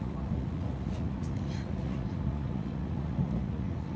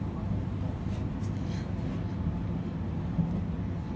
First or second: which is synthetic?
first